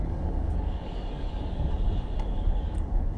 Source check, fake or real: fake